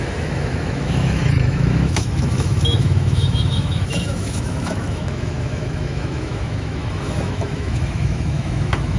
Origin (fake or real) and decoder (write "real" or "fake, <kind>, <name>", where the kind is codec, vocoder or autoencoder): fake, autoencoder, DAC-VAE